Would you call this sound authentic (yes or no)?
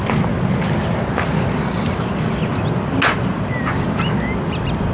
yes